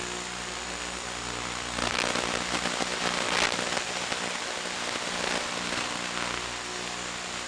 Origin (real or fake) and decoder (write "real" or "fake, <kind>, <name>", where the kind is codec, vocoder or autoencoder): real